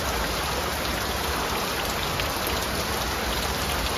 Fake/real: real